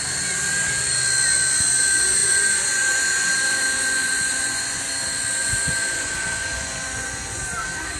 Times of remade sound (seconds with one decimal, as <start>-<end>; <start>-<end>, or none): 2.2-4.9; 5.4-7.4